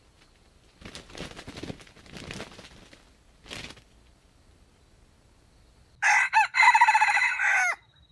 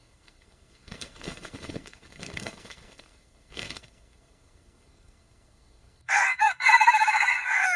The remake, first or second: second